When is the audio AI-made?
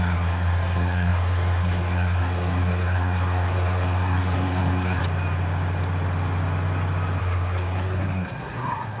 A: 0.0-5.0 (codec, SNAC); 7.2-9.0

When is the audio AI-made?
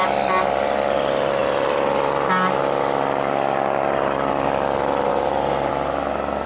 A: none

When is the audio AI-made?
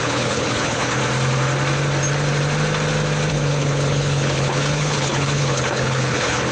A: 0.0-1.0 (codec, HILCodec); 3.3-6.5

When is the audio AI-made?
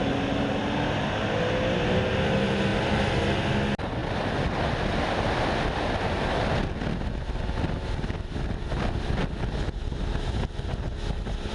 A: 2.7-3.5 (vocoder, BigVGAN v2); 9.2-10.0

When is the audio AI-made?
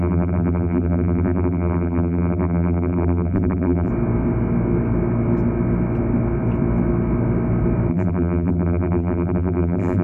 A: 0.0-3.9 (vocoder, BigVGAN v2); 7.9-10.0